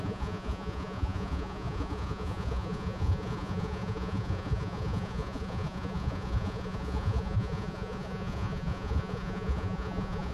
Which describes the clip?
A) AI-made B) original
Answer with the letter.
A